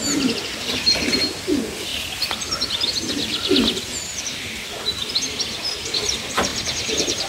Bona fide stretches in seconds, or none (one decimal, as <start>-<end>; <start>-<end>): 0.0-1.9; 2.5-7.3